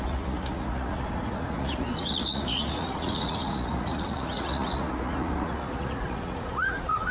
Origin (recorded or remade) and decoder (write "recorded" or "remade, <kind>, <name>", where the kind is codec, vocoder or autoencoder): remade, vocoder, Vocos